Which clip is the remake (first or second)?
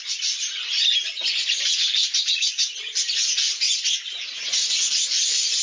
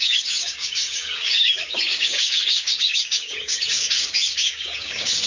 second